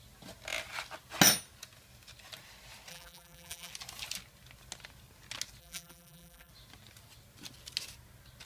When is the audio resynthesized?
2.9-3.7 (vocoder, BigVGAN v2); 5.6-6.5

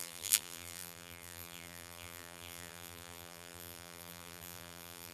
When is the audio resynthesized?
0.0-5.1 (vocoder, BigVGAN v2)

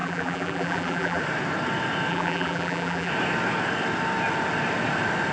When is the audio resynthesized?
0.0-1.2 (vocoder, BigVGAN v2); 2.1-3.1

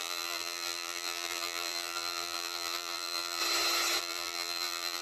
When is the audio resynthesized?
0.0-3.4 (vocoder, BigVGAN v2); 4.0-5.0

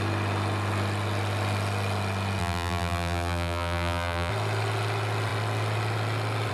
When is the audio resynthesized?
2.4-4.3 (vocoder, BigVGAN v2)

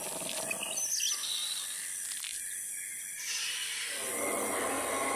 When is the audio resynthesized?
none

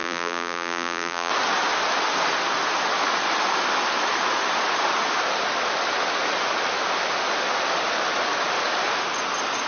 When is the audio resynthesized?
0.0-1.3 (vocoder, BigVGAN v2)

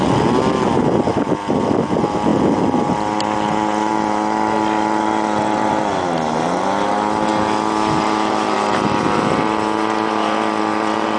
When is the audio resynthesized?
none